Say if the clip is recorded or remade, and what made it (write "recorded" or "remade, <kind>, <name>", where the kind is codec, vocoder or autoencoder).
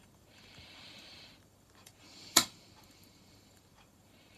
remade, vocoder, BigVGAN v2